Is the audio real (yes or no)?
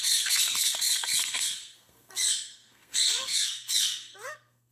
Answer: no